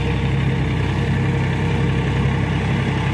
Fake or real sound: real